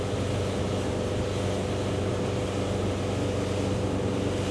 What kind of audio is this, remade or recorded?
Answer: recorded